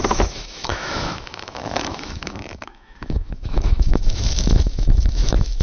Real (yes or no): no